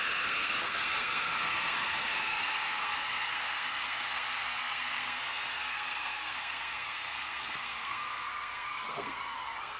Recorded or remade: remade